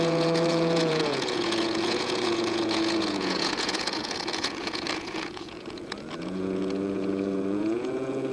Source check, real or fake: fake